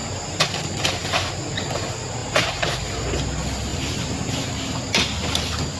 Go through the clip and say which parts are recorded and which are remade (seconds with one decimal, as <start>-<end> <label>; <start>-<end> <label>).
0.0-1.3 remade; 1.3-2.2 recorded; 2.2-2.7 remade; 2.7-3.7 recorded; 3.7-4.5 remade; 4.5-5.8 recorded